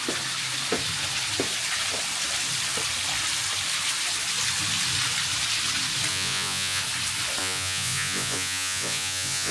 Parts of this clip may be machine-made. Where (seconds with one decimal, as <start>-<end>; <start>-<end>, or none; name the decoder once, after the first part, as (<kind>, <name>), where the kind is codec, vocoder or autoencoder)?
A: 6.1-6.8 (vocoder, Vocos); 7.4-9.5